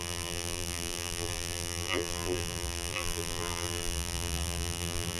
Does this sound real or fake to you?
fake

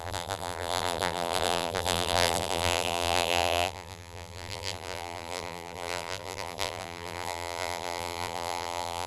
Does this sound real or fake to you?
fake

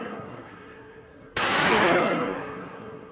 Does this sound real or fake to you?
fake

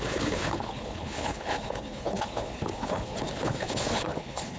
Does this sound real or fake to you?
fake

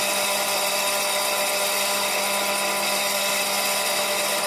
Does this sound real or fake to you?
real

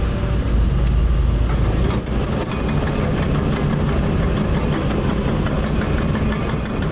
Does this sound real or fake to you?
real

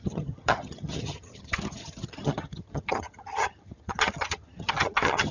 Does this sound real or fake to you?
fake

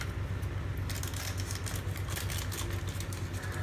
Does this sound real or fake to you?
real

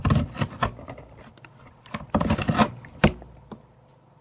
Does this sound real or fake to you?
real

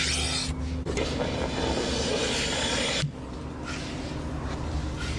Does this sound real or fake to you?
real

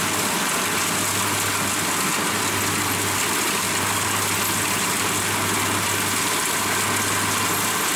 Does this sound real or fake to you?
real